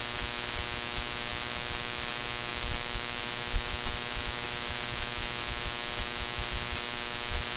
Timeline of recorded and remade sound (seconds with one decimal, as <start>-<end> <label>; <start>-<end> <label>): 0.0-7.6 recorded